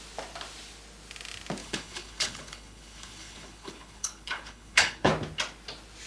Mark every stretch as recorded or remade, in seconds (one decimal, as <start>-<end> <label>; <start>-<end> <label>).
0.0-1.6 recorded; 1.6-5.1 remade; 5.1-6.1 recorded